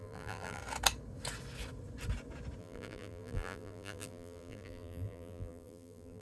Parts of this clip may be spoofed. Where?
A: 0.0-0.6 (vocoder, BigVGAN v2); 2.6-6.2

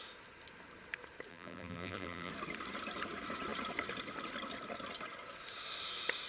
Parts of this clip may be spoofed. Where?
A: 1.3-2.3 (vocoder, BigVGAN v2)

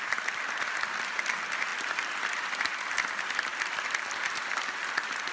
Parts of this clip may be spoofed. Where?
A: none

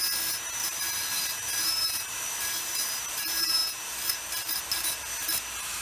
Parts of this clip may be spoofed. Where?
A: 0.6-3.2 (vocoder, BigVGAN v2)

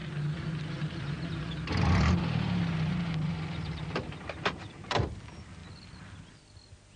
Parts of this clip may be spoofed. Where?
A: none

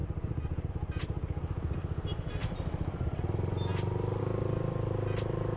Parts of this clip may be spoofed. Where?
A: 2.4-3.2 (vocoder, BigVGAN v2)